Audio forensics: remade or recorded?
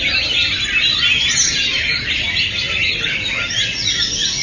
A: recorded